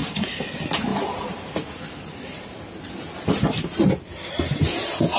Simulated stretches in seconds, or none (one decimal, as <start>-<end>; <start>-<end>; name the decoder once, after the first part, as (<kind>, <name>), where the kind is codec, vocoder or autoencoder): 0.0-0.5 (codec, DAC)